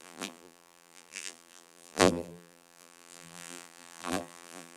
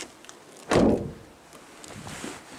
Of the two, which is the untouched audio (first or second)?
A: second